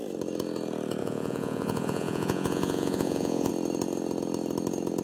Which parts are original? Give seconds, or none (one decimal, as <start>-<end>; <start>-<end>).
0.0-1.0; 3.5-5.0